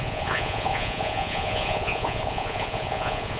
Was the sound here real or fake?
fake